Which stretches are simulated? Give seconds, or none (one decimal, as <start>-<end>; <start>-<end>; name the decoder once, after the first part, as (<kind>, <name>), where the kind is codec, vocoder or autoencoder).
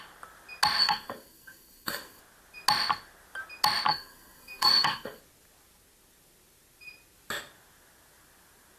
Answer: 0.8-2.2 (codec, SNAC); 3.9-5.2